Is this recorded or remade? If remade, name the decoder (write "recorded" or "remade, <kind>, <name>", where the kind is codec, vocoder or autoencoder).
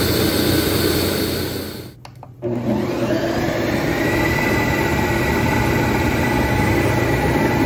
recorded